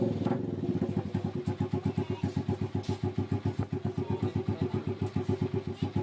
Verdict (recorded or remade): recorded